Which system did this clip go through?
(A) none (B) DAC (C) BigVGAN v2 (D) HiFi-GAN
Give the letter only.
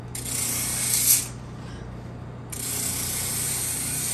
A